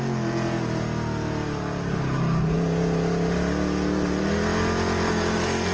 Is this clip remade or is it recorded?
recorded